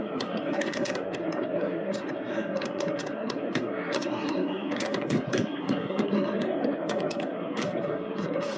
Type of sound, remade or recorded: remade